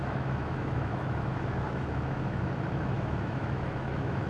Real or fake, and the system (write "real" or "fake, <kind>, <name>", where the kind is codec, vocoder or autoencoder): fake, autoencoder, DAC-VAE